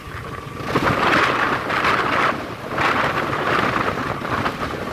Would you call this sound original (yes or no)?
yes